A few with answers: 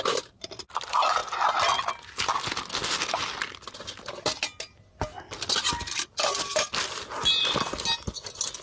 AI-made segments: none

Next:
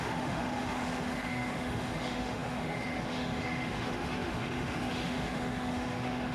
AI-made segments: 0.0-6.3 (autoencoder, DAC-VAE)

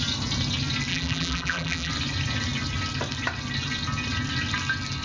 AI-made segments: 0.9-1.9 (vocoder, BigVGAN v2)

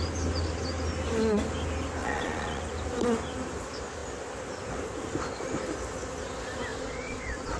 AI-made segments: 2.0-2.6 (vocoder, Vocos); 6.7-7.6

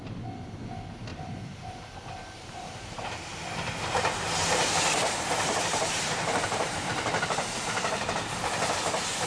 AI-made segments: 1.1-3.1 (vocoder, BigVGAN v2); 4.4-8.1